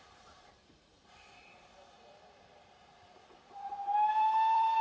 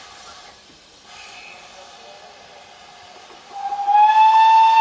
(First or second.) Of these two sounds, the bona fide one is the second